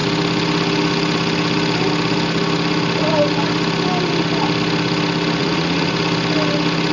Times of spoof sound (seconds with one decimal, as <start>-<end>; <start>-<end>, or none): 5.4-5.9